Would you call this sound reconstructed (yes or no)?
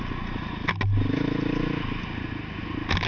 no